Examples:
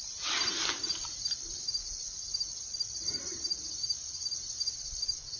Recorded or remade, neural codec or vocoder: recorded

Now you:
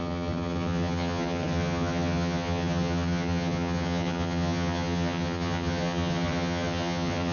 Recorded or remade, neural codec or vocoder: remade, vocoder, HiFi-GAN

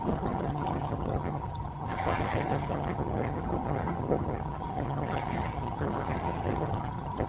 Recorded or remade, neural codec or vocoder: remade, vocoder, HiFi-GAN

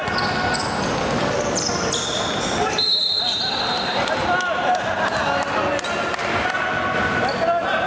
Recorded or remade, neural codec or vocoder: recorded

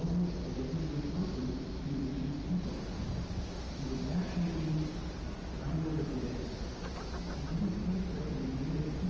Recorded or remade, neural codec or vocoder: recorded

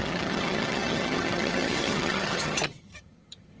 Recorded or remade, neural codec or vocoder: remade, vocoder, HiFi-GAN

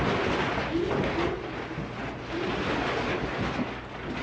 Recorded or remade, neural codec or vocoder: recorded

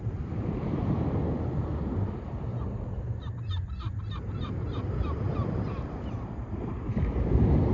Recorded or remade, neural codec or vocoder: recorded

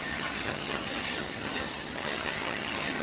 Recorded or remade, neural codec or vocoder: remade, vocoder, HiFi-GAN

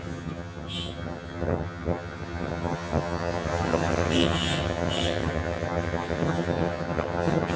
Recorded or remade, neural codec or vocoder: remade, vocoder, HiFi-GAN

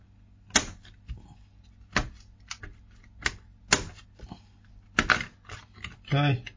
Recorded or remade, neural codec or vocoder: recorded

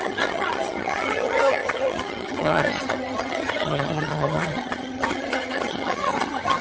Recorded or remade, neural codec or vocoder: remade, vocoder, HiFi-GAN